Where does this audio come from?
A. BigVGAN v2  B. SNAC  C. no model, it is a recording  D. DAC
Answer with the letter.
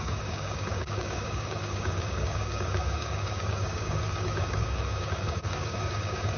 D